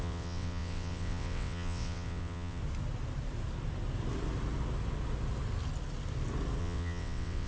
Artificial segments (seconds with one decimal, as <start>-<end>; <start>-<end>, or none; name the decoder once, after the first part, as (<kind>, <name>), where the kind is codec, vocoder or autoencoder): 0.0-2.6 (vocoder, WaveNeXt); 6.6-7.5